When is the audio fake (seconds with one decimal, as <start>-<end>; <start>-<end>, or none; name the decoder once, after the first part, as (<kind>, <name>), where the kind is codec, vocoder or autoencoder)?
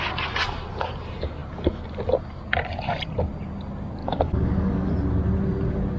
4.0-4.9 (codec, DAC)